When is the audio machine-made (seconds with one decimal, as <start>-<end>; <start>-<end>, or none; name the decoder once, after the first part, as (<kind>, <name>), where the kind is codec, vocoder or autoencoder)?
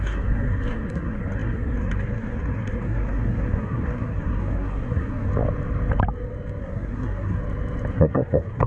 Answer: 0.0-5.3 (codec, SNAC); 6.6-7.4; 7.9-8.7